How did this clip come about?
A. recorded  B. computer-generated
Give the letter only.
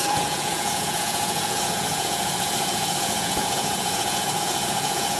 B